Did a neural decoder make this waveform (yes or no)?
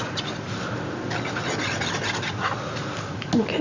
no